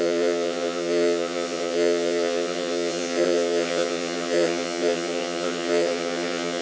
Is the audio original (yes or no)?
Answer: no